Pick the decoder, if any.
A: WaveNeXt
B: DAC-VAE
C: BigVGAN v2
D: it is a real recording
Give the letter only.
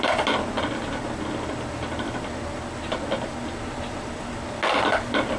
D